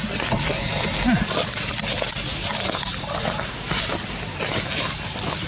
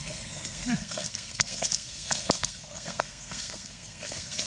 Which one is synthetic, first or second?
second